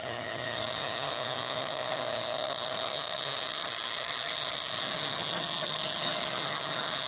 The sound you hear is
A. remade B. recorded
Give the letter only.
A